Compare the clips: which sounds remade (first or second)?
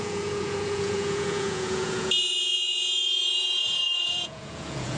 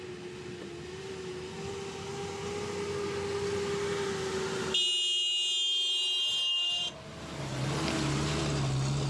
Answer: first